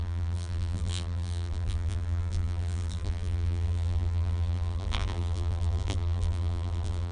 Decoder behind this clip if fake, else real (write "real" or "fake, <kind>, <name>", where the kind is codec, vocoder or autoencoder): fake, vocoder, BigVGAN v2